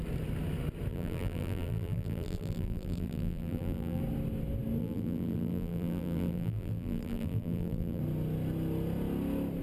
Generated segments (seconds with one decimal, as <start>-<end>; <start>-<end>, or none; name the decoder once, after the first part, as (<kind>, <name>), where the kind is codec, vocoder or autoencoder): 0.9-4.0 (vocoder, BigVGAN v2); 4.8-8.0